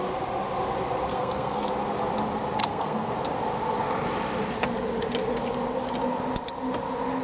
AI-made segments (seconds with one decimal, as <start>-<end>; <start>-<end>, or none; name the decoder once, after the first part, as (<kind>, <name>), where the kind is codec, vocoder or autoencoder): 1.1-1.7 (codec, SNAC); 2.6-3.1